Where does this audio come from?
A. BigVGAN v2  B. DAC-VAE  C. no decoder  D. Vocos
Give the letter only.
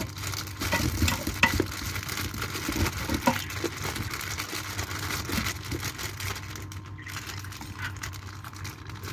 C